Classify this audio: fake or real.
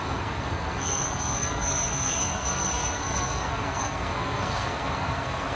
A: fake